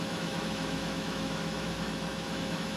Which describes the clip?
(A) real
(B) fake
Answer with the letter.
B